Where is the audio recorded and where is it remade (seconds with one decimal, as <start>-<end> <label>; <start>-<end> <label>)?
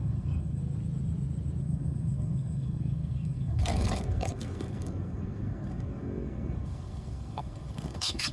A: 0.0-0.6 remade; 0.6-1.6 recorded; 1.6-8.3 remade